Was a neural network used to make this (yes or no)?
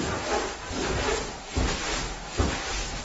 no